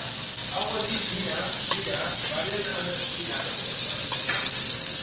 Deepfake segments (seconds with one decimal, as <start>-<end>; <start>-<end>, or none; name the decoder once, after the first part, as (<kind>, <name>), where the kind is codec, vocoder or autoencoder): none